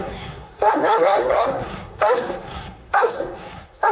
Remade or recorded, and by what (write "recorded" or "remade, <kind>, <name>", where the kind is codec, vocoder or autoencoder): remade, codec, SNAC